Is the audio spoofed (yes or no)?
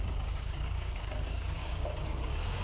yes